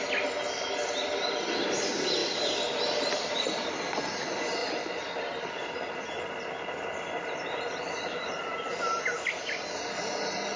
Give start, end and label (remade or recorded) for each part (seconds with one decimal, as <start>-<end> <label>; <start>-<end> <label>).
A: 0.0-10.6 recorded